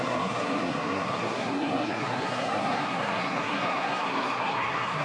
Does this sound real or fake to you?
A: fake